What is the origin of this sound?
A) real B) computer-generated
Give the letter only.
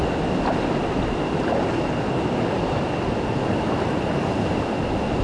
A